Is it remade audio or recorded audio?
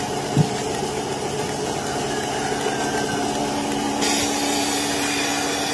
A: recorded